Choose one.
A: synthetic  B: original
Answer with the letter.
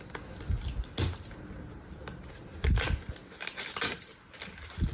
B